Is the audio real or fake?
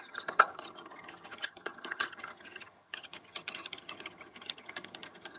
fake